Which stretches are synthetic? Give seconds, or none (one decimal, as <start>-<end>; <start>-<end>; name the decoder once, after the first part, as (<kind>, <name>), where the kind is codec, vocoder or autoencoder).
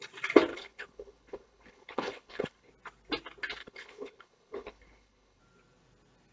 0.5-2.7 (codec, HILCodec); 3.6-5.4